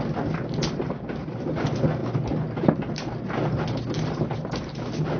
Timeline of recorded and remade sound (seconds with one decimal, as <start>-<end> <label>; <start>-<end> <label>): 0.0-5.2 recorded